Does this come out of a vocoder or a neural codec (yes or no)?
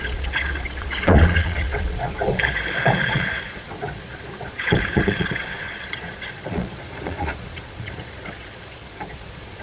yes